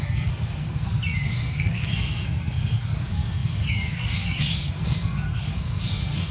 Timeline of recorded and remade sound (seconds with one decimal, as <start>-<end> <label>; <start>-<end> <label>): 0.0-6.3 remade